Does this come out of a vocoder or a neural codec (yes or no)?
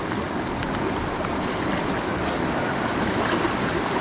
no